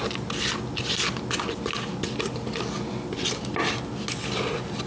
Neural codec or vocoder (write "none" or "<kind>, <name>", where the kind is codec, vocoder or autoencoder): none